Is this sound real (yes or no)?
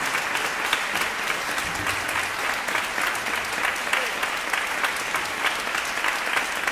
yes